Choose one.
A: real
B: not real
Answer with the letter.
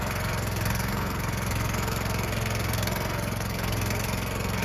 B